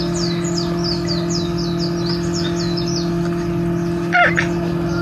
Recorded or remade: recorded